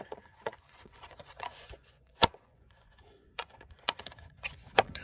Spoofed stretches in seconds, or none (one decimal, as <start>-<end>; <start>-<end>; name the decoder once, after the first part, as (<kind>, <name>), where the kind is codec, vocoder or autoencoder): 0.0-5.0 (vocoder, Vocos)